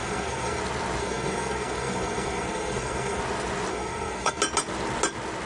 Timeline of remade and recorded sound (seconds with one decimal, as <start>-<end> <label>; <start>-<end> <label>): 0.0-0.6 remade; 0.6-1.0 recorded; 1.0-3.2 remade; 3.2-3.7 recorded; 3.7-4.4 remade; 4.4-5.5 recorded